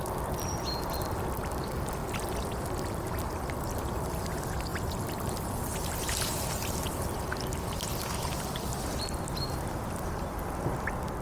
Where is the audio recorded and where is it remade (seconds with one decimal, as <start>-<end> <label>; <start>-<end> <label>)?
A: 0.0-11.2 recorded